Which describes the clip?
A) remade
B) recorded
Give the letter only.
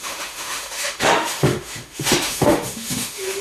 A